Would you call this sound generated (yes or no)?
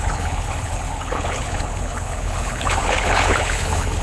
yes